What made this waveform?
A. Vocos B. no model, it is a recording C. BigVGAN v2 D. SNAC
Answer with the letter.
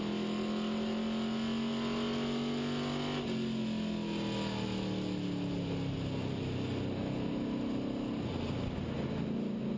B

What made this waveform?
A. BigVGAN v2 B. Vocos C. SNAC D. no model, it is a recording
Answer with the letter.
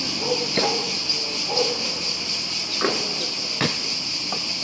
D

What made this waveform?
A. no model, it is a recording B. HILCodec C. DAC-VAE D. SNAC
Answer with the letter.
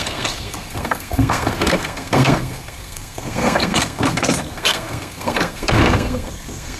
D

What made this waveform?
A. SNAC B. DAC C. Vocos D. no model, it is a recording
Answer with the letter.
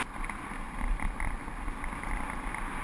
D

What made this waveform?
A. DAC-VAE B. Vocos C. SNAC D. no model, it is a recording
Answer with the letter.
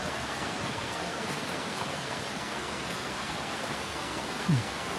C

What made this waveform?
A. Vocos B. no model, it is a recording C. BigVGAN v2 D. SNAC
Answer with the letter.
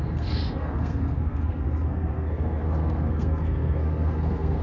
D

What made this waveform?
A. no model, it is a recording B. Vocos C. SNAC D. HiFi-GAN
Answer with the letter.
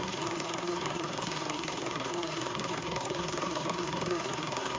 C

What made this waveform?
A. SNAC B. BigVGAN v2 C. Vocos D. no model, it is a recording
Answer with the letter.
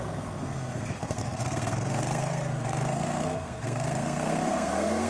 A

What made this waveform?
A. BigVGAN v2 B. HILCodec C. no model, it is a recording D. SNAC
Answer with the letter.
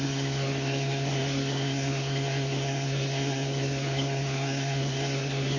D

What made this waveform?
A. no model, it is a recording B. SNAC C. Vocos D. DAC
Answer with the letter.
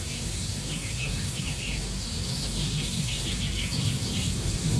B